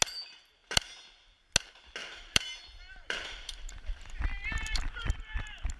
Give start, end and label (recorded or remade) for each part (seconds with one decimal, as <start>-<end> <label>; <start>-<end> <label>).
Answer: 0.0-0.6 recorded; 0.6-1.4 remade; 1.4-2.0 recorded; 2.0-5.8 remade